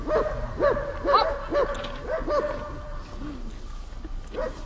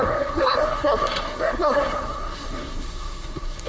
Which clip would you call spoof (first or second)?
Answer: second